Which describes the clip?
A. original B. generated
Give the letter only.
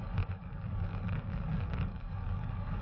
B